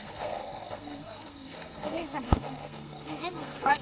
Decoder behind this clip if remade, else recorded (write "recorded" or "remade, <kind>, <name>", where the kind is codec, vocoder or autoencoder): remade, codec, SNAC